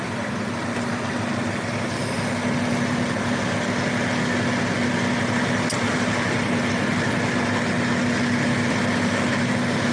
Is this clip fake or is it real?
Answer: real